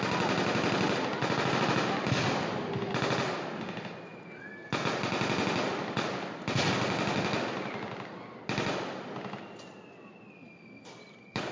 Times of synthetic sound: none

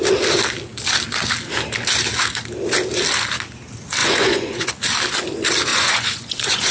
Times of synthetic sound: 4.0-4.7 (vocoder, Vocos); 5.7-6.7

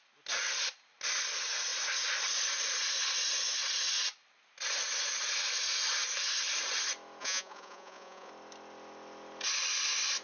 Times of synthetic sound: 7.2-8.3 (vocoder, Vocos)

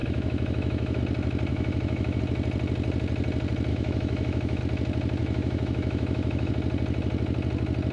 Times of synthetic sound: 0.0-1.0 (autoencoder, DAC-VAE); 1.5-2.2; 3.7-4.6; 5.2-6.5

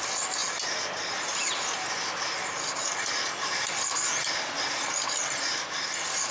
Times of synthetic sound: none